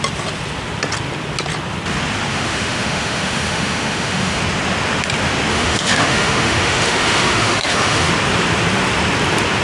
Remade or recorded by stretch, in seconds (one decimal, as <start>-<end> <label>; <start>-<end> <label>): 0.0-2.3 recorded; 2.3-4.4 remade; 4.4-5.5 recorded; 5.5-8.1 remade; 8.1-9.6 recorded